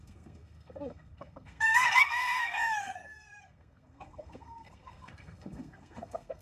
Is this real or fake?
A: fake